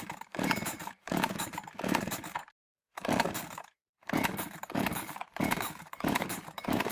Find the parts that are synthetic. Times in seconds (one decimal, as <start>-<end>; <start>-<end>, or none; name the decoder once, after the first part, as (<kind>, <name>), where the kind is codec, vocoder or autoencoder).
0.0-6.9 (codec, DAC)